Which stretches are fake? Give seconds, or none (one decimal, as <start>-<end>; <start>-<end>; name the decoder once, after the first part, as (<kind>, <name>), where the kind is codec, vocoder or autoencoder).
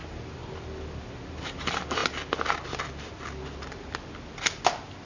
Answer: none